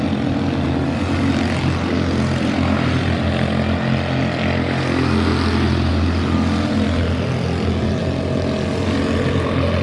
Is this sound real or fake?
real